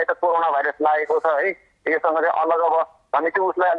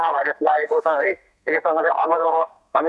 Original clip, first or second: first